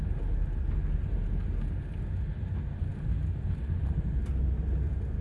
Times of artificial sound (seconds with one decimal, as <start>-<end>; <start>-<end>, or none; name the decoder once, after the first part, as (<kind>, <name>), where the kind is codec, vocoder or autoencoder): none